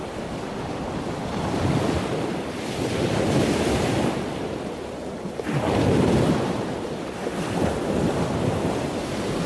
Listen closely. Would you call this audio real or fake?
real